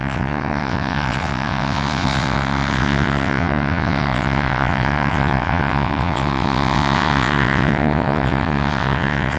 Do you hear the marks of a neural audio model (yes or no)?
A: yes